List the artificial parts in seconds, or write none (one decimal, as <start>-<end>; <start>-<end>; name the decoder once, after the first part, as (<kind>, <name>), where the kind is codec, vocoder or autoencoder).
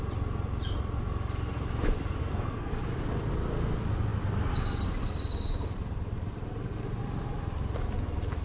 2.2-2.7 (codec, SNAC)